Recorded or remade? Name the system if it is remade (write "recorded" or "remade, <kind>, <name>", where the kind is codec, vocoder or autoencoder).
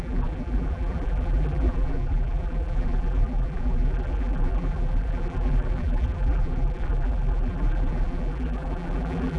remade, vocoder, BigVGAN v2